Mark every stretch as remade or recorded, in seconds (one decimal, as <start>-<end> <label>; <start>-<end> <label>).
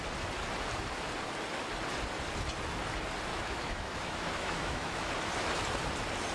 0.0-3.3 recorded; 3.3-5.1 remade; 5.1-6.3 recorded